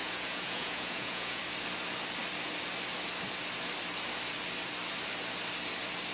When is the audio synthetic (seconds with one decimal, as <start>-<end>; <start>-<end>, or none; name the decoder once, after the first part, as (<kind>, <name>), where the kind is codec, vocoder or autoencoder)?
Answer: 0.0-1.4 (vocoder, Vocos)